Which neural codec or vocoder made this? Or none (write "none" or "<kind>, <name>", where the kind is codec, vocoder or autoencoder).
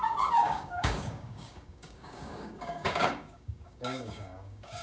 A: codec, DAC